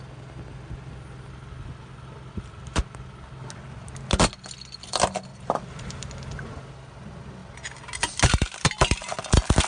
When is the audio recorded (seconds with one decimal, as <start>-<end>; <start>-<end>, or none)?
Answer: 0.0-5.3; 6.0-9.7